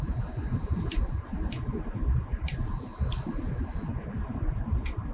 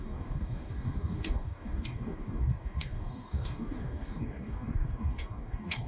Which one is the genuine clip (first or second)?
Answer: first